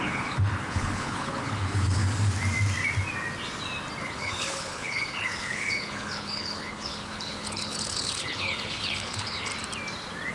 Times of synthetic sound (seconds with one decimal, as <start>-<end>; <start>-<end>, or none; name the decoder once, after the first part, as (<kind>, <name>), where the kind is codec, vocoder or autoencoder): 0.0-2.0 (codec, HILCodec); 4.0-9.5